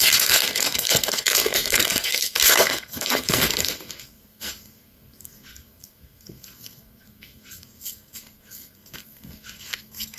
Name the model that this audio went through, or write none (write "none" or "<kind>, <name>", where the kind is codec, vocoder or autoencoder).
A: codec, SNAC